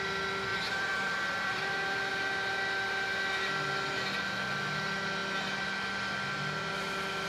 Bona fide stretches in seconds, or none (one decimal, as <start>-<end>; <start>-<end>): 0.0-0.5; 2.1-7.3

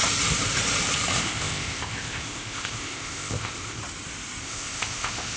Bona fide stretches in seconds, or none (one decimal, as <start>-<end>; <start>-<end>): 0.0-1.2; 3.8-4.4

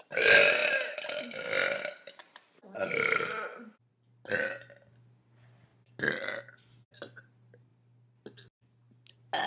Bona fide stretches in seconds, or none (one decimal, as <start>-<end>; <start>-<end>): 0.0-9.5

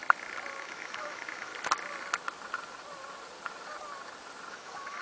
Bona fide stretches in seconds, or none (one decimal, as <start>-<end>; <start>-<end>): 0.0-0.6; 1.5-4.5

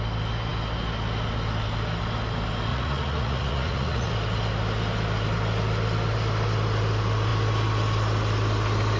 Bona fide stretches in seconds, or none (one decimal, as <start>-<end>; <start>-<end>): 0.0-2.7; 4.1-9.0

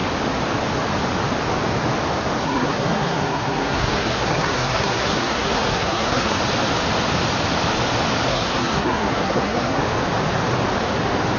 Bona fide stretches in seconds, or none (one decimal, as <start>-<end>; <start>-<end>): 0.0-2.4; 6.4-8.3; 9.8-11.4